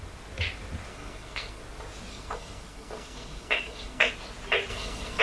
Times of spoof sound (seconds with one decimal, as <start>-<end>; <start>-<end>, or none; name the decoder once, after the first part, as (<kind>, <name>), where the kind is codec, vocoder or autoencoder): 0.9-1.6 (codec, SNAC); 2.1-4.1; 4.7-5.2